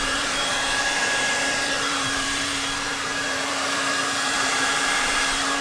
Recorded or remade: remade